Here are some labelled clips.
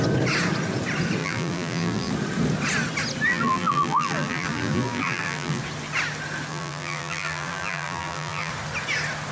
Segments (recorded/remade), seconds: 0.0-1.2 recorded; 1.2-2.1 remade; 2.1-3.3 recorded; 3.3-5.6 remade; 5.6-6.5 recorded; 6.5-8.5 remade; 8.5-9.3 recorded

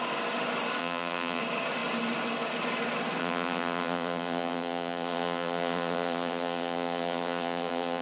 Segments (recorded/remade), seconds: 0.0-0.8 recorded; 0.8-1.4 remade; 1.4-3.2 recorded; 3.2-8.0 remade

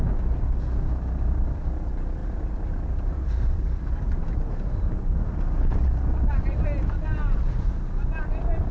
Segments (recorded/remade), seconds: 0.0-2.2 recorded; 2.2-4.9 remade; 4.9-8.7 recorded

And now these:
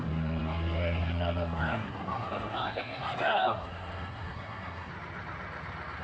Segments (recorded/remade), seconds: 0.0-4.9 remade; 4.9-6.0 recorded

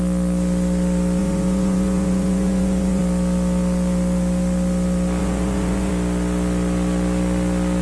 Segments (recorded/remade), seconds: 0.0-1.2 recorded; 1.2-3.0 remade; 3.0-5.2 recorded; 5.2-5.9 remade; 5.9-7.8 recorded

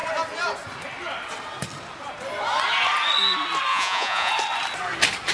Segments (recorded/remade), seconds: 0.0-3.7 recorded; 3.7-4.3 remade; 4.3-5.3 recorded